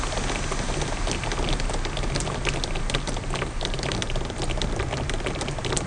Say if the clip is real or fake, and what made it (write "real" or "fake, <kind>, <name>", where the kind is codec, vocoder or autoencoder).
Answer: real